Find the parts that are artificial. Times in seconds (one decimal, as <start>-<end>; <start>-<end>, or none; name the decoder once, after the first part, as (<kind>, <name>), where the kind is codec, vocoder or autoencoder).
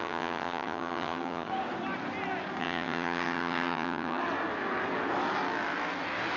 0.0-1.5 (vocoder, HiFi-GAN); 2.6-4.2